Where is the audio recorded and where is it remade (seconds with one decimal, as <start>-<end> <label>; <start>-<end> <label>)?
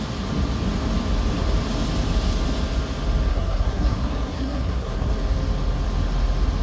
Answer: 0.0-3.3 recorded; 3.3-5.1 remade; 5.1-6.6 recorded